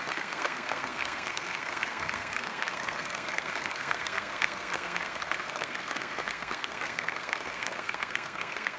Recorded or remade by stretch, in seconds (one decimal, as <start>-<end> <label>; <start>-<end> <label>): 0.0-8.8 remade

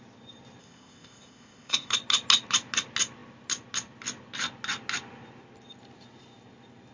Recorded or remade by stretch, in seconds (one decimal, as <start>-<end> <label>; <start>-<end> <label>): 0.0-0.6 recorded; 0.6-1.9 remade; 1.9-6.9 recorded

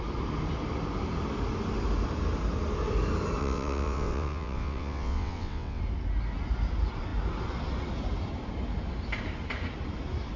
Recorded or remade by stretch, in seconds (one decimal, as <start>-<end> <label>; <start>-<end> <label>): 0.0-3.4 recorded; 3.4-5.8 remade; 5.8-10.4 recorded

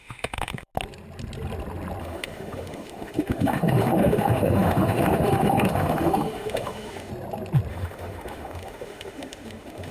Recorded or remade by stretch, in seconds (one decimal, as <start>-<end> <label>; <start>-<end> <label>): 0.0-0.7 remade; 0.7-2.0 recorded; 2.0-7.1 remade; 7.1-7.7 recorded; 7.7-9.9 remade